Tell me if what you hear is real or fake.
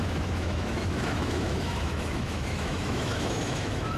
fake